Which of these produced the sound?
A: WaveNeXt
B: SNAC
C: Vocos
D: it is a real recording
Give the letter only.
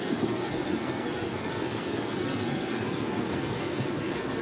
B